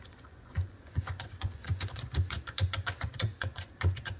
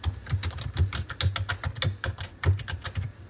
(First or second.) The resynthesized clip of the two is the first